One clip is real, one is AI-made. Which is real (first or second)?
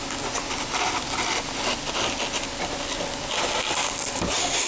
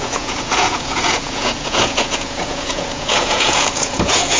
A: first